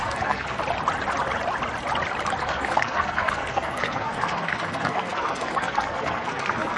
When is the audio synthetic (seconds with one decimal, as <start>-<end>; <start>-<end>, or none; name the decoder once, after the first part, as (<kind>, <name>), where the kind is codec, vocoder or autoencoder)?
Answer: 0.0-0.6 (codec, SNAC); 2.4-6.8